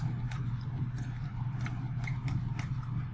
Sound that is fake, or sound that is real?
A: real